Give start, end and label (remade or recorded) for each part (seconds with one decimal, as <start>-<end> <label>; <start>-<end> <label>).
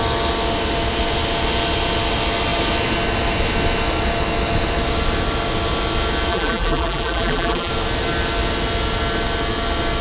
0.0-6.3 recorded; 6.3-7.7 remade; 7.7-10.0 recorded